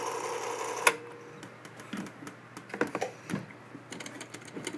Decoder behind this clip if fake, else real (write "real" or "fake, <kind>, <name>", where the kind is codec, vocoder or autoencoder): real